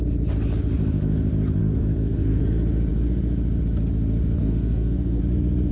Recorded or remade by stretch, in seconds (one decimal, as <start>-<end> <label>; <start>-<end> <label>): 0.0-1.6 recorded; 1.6-2.4 remade; 2.4-4.4 recorded; 4.4-5.2 remade; 5.2-5.7 recorded